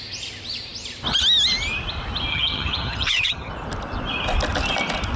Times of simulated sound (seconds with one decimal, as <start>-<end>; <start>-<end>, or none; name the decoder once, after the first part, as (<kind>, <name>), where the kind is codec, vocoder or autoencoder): 2.3-3.5 (vocoder, HiFi-GAN)